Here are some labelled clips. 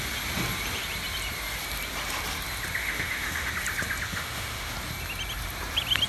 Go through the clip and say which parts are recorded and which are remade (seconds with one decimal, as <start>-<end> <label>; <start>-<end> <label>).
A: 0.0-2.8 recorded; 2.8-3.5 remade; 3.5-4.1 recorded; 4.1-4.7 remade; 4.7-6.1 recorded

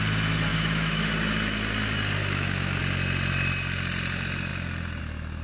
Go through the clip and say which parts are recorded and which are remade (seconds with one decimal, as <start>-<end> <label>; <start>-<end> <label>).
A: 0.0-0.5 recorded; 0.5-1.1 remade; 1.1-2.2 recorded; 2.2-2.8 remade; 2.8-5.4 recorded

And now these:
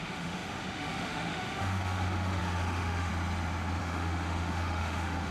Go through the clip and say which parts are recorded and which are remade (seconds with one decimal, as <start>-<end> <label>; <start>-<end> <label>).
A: 0.0-3.1 remade; 3.1-3.8 recorded; 3.8-5.3 remade

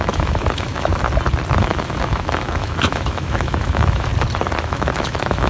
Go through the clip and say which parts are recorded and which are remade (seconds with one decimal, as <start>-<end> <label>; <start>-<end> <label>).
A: 0.0-0.9 remade; 0.9-1.6 recorded; 1.6-4.1 remade; 4.1-4.6 recorded; 4.6-5.5 remade

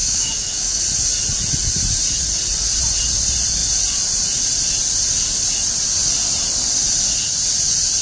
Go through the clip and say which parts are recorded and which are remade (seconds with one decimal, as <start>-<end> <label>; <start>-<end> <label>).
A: 0.0-0.8 remade; 0.8-8.0 recorded

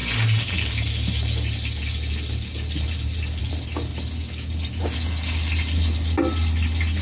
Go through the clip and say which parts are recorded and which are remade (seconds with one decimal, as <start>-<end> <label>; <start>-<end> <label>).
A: 0.0-7.0 recorded

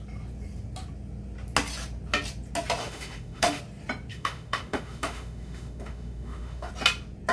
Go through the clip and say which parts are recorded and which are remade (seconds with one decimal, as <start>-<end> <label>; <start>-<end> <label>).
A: 0.0-2.8 recorded; 2.8-3.6 remade; 3.6-4.1 recorded; 4.1-6.7 remade; 6.7-7.3 recorded